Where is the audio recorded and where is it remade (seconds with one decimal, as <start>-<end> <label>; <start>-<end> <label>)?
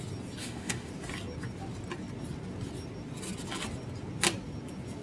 0.0-0.4 recorded; 0.4-0.9 remade; 0.9-5.0 recorded